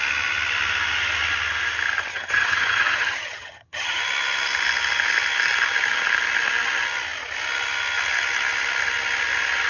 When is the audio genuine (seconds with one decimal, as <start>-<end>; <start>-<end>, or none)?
0.0-2.1; 4.0-9.7